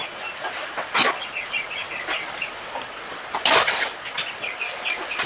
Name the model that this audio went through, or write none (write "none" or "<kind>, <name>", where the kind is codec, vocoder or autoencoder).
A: none